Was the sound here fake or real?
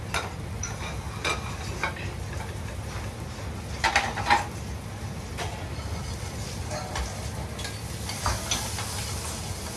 real